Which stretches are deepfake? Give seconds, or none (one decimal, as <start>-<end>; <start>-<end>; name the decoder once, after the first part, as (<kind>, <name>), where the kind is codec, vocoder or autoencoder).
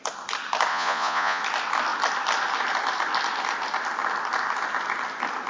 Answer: 0.7-1.4 (vocoder, Vocos)